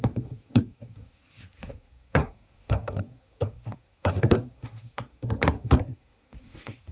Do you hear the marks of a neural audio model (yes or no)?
yes